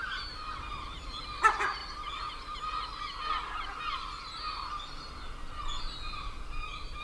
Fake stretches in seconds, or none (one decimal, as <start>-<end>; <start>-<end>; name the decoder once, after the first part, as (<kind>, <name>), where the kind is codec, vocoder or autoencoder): none